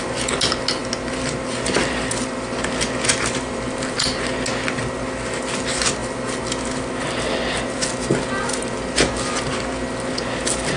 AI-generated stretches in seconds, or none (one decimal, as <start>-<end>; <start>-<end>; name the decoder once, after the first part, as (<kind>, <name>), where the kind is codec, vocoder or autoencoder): none